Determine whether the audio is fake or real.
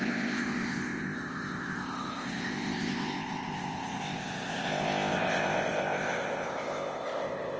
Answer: fake